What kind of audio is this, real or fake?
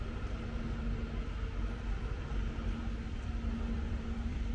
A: real